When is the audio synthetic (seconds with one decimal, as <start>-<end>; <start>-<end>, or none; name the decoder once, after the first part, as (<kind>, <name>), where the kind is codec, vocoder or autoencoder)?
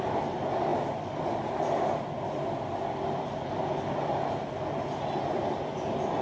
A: none